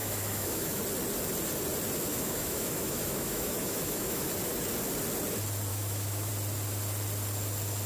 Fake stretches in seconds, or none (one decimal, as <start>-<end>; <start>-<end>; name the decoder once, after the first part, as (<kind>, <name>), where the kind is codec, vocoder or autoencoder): 0.0-0.8 (autoencoder, DAC-VAE); 2.1-4.3; 5.7-6.3